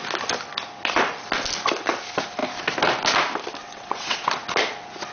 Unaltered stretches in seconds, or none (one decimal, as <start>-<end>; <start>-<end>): 0.0-3.6; 4.3-5.1